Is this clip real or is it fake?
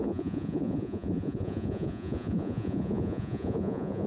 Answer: fake